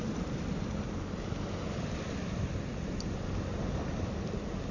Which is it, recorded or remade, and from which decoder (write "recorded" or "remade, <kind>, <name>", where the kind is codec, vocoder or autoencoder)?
recorded